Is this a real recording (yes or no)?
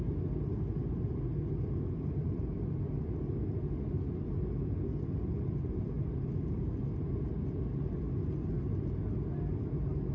yes